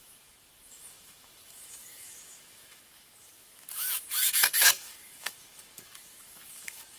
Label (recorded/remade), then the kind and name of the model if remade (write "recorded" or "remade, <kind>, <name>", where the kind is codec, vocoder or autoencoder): remade, autoencoder, DAC-VAE